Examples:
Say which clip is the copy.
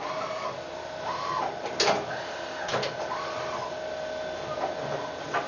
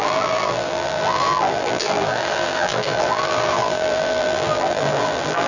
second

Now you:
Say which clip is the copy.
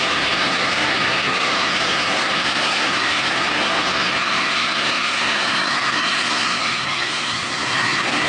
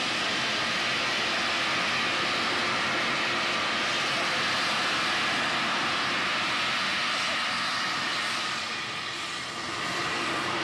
first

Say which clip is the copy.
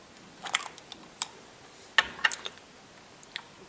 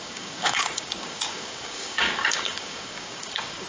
second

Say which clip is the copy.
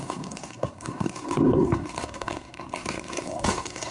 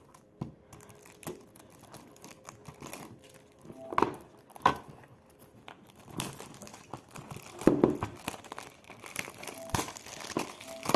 first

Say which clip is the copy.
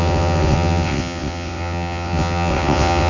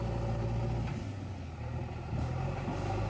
first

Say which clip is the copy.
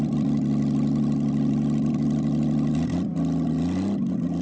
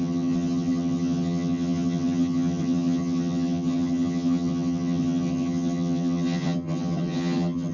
second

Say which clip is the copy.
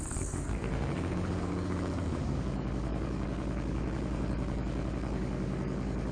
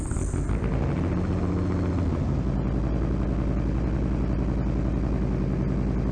first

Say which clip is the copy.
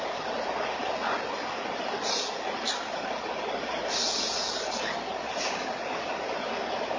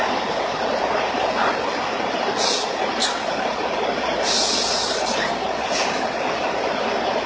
second